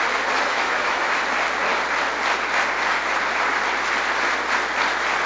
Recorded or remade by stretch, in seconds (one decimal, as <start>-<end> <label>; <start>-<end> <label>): 0.0-0.5 recorded; 0.5-1.2 remade; 1.2-5.3 recorded